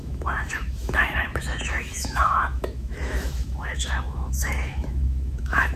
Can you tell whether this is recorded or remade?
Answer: remade